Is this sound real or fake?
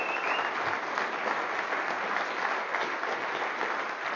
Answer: real